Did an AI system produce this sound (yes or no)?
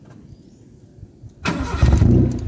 no